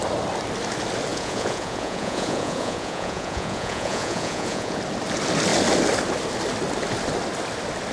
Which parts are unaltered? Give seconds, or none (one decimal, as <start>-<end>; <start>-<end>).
0.0-1.1; 4.8-7.9